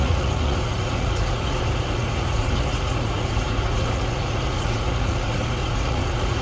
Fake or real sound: fake